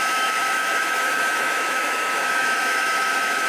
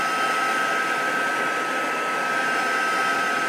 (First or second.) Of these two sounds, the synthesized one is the first